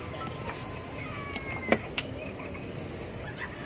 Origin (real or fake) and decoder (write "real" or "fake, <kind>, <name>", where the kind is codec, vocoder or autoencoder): real